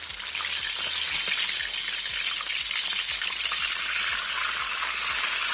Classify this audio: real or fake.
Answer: real